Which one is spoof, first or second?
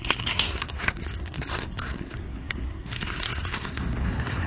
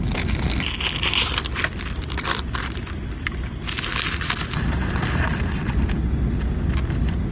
first